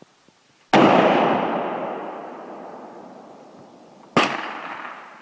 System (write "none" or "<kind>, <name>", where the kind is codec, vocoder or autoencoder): none